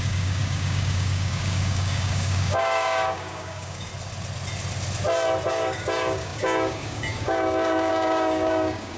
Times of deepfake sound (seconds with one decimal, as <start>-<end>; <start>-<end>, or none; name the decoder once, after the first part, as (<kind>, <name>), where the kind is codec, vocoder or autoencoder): 0.0-3.9 (codec, DAC); 5.5-9.0